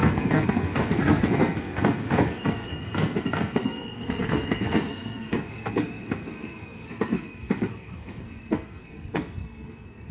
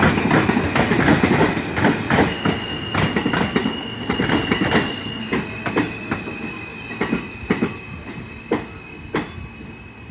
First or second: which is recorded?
second